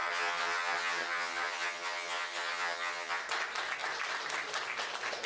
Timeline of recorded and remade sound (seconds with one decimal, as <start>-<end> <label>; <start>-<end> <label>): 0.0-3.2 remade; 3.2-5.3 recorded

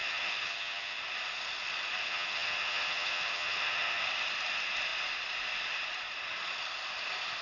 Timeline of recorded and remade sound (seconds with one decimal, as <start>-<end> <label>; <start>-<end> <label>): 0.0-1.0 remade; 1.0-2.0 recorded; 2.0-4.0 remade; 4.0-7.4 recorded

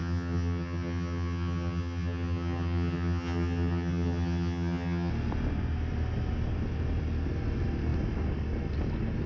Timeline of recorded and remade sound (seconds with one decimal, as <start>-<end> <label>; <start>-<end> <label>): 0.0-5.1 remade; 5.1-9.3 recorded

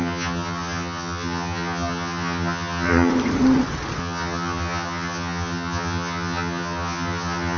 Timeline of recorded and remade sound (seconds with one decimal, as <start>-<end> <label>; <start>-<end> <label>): 0.0-3.1 remade; 3.1-4.0 recorded; 4.0-7.6 remade

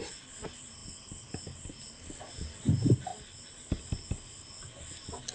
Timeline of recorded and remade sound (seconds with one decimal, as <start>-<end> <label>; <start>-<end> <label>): 0.0-5.3 recorded

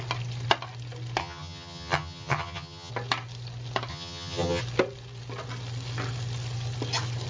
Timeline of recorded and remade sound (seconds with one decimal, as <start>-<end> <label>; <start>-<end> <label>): 0.0-1.2 recorded; 1.2-2.9 remade; 2.9-3.9 recorded; 3.9-4.6 remade; 4.6-7.3 recorded

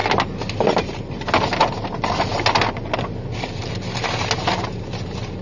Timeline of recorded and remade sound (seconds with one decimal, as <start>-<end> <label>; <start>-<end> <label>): 0.0-5.4 recorded